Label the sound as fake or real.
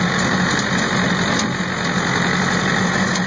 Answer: real